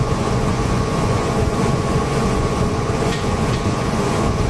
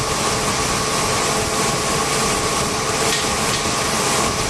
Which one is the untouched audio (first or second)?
second